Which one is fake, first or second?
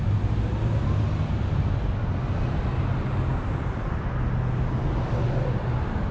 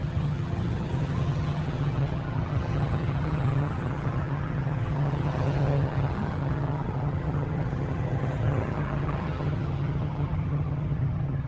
second